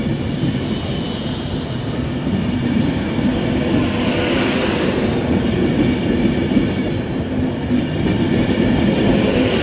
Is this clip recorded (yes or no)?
yes